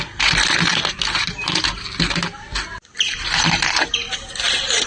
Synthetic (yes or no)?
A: no